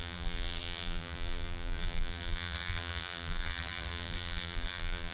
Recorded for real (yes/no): no